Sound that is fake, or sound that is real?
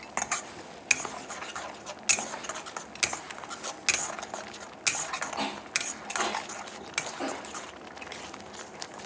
real